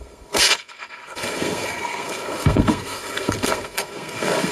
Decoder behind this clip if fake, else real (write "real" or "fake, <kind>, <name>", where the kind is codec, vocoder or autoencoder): fake, codec, SNAC